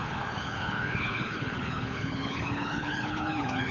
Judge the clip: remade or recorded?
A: remade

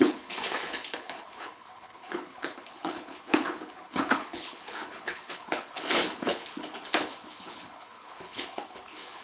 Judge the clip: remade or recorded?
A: remade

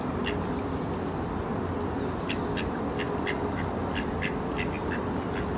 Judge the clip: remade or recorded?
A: recorded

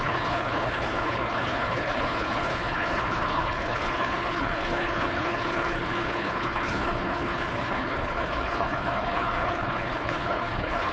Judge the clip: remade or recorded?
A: remade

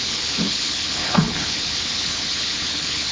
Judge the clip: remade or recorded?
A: remade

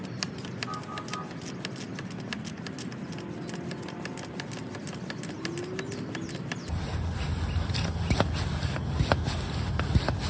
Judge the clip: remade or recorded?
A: recorded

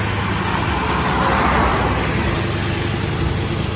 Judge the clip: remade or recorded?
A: recorded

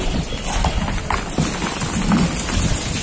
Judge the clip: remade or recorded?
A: recorded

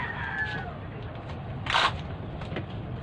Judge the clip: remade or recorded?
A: recorded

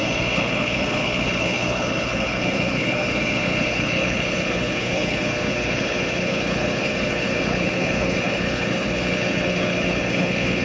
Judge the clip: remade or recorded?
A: remade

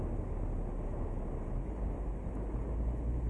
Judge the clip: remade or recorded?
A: recorded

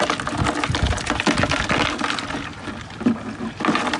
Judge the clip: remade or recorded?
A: recorded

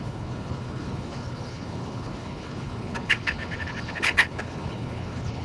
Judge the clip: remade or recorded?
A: remade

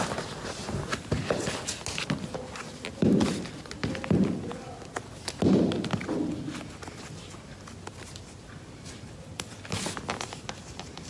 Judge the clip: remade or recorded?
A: recorded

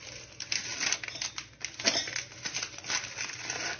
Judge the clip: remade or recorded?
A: recorded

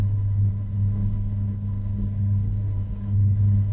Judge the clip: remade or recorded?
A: remade